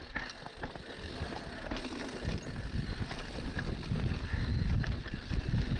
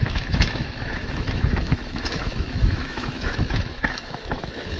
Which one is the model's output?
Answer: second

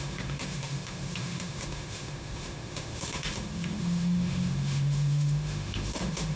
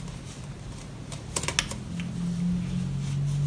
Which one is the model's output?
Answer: first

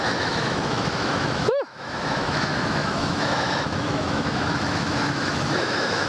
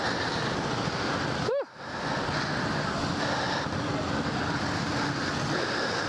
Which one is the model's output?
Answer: first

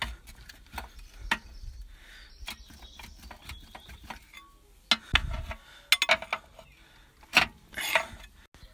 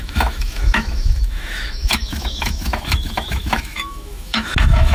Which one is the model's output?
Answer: second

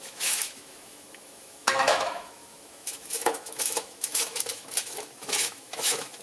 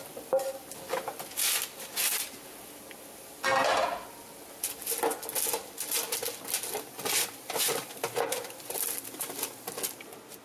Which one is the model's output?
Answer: first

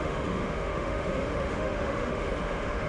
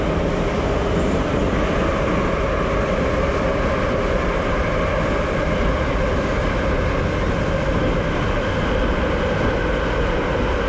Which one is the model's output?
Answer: first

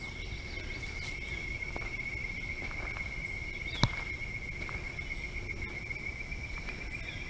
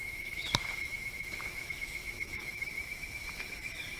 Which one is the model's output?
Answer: second